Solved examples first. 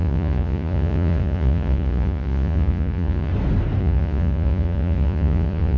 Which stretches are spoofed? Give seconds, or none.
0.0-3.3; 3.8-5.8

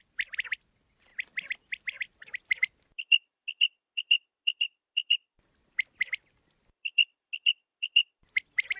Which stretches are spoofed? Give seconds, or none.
none

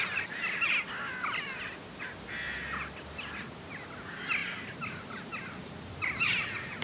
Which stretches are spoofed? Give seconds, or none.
none

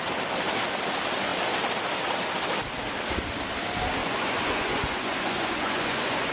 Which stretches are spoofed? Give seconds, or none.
4.0-6.3

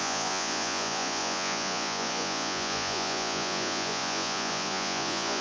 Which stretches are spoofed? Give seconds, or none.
0.0-5.4

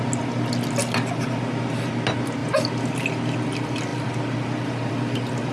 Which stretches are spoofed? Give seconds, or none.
none

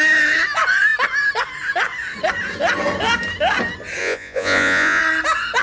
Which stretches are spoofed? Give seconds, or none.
4.0-5.0